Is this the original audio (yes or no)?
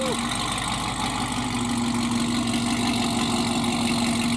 yes